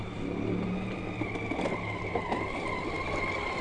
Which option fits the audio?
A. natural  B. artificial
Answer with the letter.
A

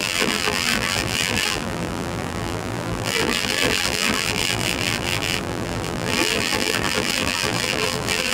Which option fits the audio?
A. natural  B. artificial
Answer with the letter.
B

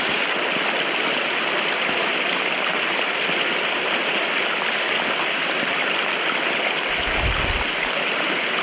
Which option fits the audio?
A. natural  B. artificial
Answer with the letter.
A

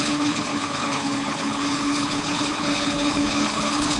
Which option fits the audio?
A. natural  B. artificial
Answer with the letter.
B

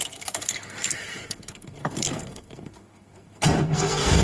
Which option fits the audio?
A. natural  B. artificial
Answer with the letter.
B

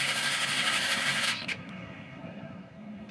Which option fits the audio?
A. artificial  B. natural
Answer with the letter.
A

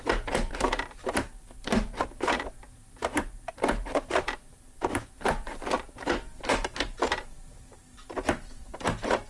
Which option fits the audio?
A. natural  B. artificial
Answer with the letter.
B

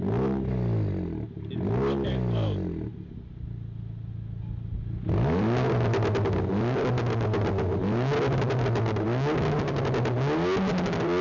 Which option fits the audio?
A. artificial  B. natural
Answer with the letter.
B